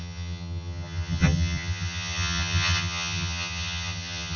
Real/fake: fake